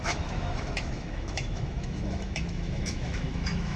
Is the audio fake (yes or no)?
yes